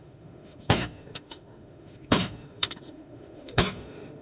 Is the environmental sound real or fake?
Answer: fake